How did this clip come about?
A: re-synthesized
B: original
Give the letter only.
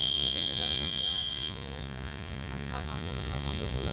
A